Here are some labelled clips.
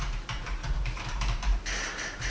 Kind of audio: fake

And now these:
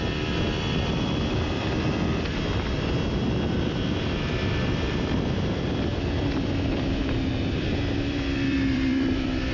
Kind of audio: fake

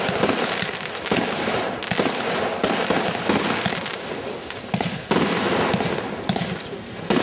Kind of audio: real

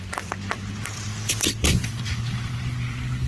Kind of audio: fake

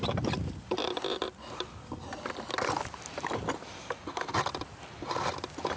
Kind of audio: fake